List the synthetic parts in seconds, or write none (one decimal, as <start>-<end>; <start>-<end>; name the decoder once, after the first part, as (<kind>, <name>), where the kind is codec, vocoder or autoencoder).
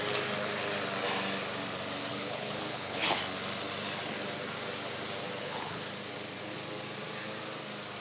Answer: 2.1-3.2 (codec, HILCodec); 5.4-5.9